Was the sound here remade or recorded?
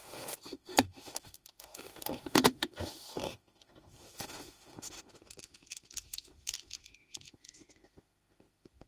remade